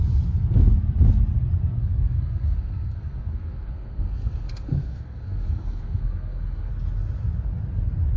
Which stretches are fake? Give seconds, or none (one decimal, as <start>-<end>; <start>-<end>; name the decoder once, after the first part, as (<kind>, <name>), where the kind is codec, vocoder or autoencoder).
1.8-6.7 (codec, SNAC)